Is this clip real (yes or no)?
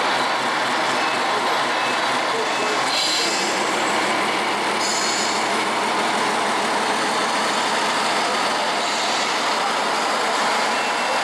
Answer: yes